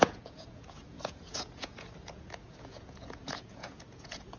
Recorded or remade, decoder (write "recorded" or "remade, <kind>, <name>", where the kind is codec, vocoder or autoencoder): remade, vocoder, Vocos